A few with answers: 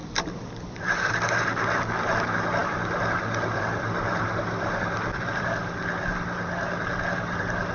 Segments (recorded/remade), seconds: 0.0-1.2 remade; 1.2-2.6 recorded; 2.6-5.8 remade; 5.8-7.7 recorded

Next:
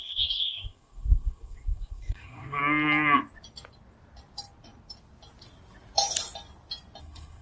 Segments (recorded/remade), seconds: 0.0-2.6 remade; 2.6-7.0 recorded; 7.0-7.4 remade